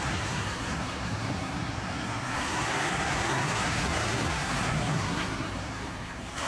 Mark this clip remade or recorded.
remade